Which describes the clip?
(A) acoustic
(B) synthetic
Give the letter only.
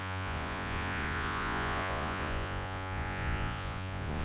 B